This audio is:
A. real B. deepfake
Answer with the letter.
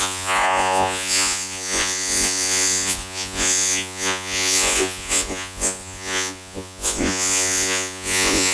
B